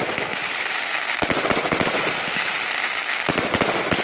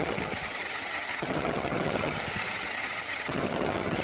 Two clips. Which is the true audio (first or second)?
first